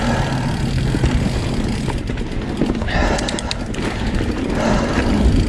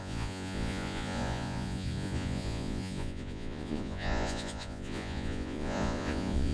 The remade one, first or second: second